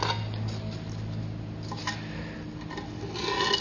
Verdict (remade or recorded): recorded